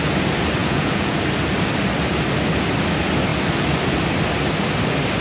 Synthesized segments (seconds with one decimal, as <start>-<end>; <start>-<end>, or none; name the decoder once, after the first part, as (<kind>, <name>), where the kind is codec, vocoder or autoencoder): 0.6-1.2 (vocoder, Vocos)